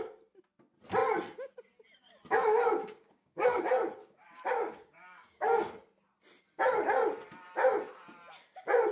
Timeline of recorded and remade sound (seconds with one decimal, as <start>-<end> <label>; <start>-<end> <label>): 0.0-2.8 recorded; 2.8-3.6 remade; 3.6-4.0 recorded; 4.0-5.7 remade; 5.7-8.9 recorded